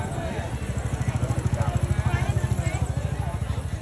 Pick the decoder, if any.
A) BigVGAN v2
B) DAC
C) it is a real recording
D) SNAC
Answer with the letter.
C